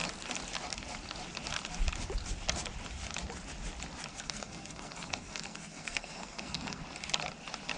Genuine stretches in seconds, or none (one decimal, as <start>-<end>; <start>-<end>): 0.0-4.1; 6.8-7.8